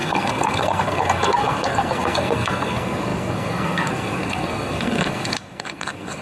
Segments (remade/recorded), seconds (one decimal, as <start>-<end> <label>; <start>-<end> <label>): 0.0-6.2 remade